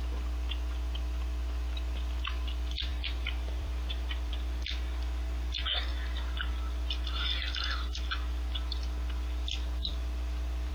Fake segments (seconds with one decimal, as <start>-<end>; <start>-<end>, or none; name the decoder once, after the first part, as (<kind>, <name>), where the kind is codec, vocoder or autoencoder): 2.9-4.3 (vocoder, BigVGAN v2); 5.9-6.5; 9.9-10.7